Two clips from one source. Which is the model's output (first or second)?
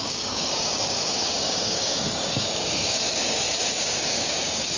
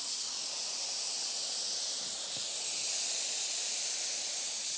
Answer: first